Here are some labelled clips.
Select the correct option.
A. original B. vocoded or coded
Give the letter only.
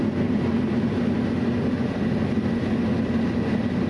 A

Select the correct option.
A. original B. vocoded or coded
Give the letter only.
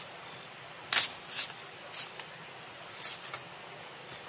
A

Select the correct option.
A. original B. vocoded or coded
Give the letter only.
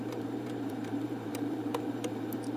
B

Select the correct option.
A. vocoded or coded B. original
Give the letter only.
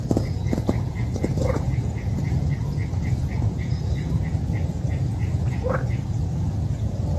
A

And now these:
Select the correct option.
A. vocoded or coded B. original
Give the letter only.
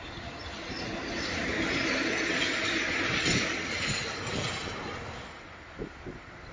B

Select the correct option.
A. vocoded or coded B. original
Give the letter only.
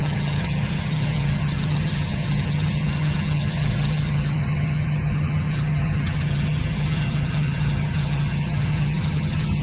A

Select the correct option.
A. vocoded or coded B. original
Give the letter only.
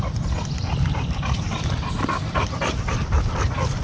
B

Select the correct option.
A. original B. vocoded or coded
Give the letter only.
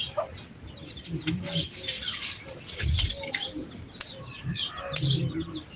A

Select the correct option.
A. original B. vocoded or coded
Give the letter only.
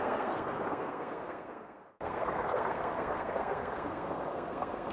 B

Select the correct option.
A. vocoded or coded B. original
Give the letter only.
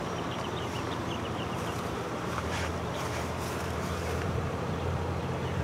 A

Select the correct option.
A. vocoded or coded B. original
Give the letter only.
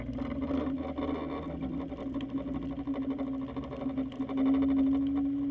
B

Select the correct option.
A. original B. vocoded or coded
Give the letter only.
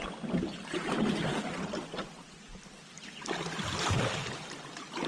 A